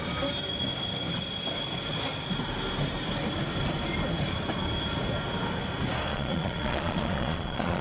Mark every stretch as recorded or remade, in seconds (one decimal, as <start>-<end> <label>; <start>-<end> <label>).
0.0-6.1 recorded; 6.1-7.8 remade

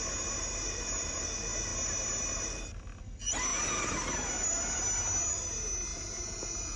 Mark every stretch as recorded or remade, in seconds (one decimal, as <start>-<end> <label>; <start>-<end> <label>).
0.0-5.9 recorded; 5.9-6.8 remade